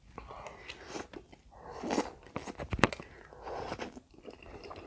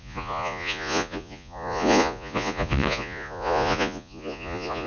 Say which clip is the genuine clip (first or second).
first